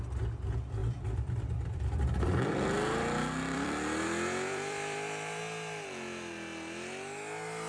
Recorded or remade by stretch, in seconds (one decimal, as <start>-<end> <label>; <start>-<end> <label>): 0.0-0.8 recorded; 0.8-5.4 remade; 5.4-7.7 recorded